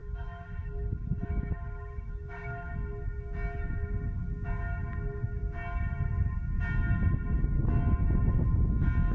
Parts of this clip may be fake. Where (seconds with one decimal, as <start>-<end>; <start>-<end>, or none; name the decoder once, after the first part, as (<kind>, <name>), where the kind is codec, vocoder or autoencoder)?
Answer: 0.0-2.7 (autoencoder, DAC-VAE)